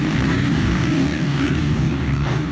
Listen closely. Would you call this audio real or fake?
fake